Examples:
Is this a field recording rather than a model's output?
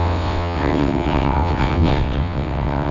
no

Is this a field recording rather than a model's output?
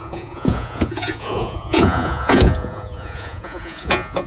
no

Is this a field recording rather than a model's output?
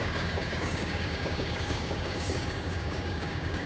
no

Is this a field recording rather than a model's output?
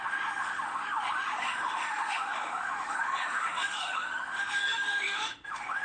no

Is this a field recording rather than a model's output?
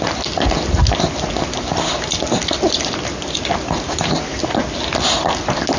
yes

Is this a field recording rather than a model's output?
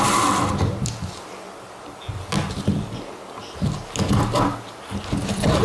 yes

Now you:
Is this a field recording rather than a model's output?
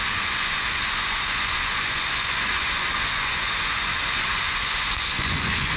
no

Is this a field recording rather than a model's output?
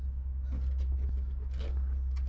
yes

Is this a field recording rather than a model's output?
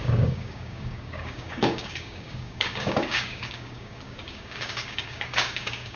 no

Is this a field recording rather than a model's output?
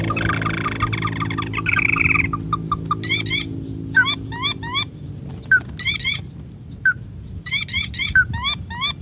yes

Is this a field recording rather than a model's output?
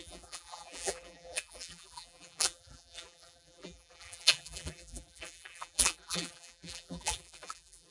no